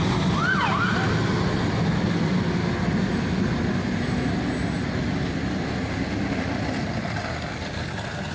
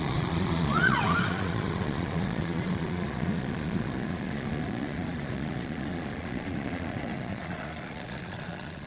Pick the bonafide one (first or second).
first